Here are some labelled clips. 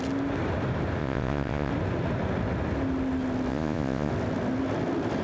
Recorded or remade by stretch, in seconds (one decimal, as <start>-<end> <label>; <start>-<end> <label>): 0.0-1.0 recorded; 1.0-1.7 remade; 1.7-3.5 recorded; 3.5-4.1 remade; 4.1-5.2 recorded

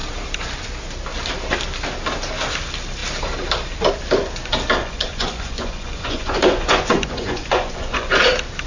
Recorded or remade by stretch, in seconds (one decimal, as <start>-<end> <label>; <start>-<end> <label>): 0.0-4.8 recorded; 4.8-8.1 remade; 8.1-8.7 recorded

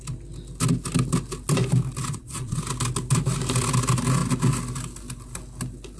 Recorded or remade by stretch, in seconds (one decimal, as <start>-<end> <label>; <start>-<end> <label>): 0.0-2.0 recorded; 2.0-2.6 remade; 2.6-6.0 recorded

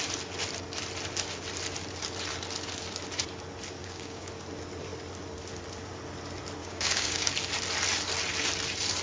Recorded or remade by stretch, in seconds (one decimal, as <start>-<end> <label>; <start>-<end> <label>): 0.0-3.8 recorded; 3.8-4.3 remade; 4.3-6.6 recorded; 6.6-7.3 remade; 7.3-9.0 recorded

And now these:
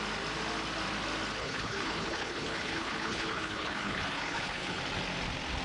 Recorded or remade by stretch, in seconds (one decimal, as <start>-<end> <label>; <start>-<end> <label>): 0.0-1.4 recorded; 1.4-4.8 remade; 4.8-5.6 recorded

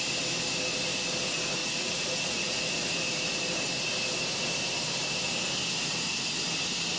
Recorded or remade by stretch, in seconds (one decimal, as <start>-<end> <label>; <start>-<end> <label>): 0.0-1.6 recorded; 1.6-2.6 remade; 2.6-7.0 recorded

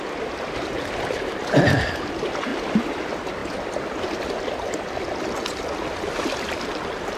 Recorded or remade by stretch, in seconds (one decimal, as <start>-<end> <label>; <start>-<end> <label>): 0.0-2.5 recorded; 2.5-3.0 remade; 3.0-7.2 recorded